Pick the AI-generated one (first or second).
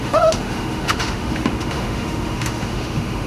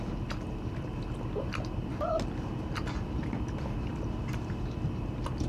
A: first